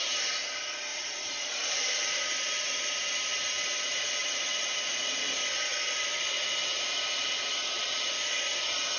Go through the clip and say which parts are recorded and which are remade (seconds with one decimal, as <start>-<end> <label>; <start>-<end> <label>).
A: 0.0-0.9 recorded; 0.9-2.4 remade; 2.4-9.0 recorded